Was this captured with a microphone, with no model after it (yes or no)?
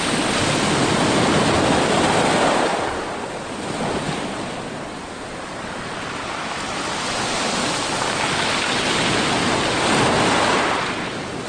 yes